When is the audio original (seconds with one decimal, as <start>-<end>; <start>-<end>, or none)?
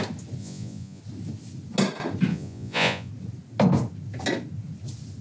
0.0-0.4; 1.0-2.3; 3.1-5.2